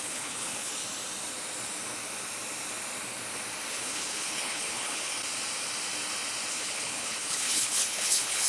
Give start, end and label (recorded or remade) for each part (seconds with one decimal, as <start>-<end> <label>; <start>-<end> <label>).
0.0-0.7 remade; 0.7-3.7 recorded; 3.7-5.1 remade; 5.1-6.5 recorded; 6.5-8.5 remade